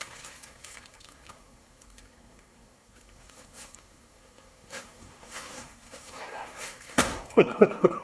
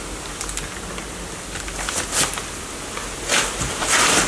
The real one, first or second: second